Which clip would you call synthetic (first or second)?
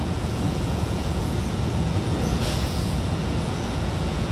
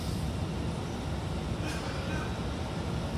first